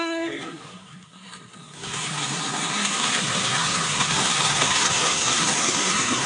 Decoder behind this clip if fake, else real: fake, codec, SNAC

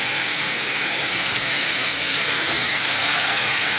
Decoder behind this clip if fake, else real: fake, codec, SNAC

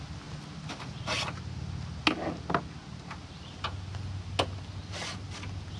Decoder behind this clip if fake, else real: real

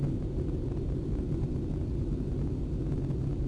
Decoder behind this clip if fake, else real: real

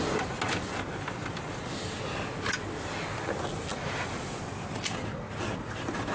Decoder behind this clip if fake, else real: real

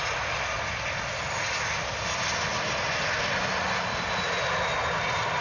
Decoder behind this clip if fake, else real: real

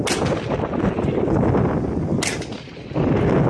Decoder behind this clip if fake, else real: real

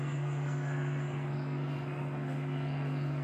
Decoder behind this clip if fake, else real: fake, codec, SNAC